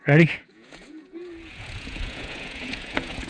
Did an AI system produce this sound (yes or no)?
yes